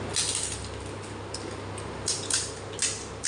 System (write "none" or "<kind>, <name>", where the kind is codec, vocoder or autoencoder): none